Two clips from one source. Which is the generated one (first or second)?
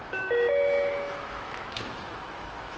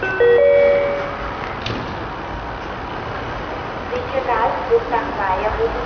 first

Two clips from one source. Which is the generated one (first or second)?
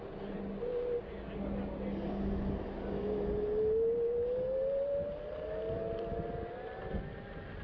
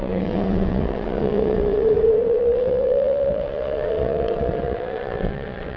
second